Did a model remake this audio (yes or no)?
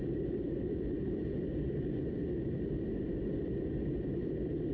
yes